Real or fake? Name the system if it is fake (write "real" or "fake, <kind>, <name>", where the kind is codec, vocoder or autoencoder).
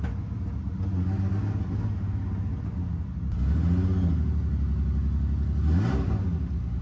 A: real